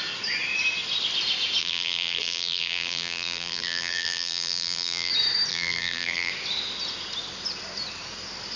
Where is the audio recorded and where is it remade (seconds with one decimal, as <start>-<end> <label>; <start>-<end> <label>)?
0.0-1.6 recorded; 1.6-5.1 remade; 5.1-5.5 recorded; 5.5-6.3 remade; 6.3-8.6 recorded